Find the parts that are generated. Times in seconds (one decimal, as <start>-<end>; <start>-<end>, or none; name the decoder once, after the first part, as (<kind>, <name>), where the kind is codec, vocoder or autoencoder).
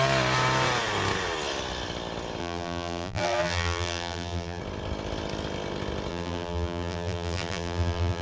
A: 2.4-4.6 (vocoder, BigVGAN v2); 6.1-8.2